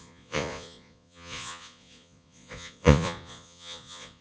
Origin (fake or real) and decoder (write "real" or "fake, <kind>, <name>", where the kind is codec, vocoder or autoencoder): fake, vocoder, Vocos